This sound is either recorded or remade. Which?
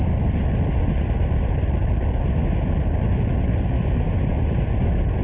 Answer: recorded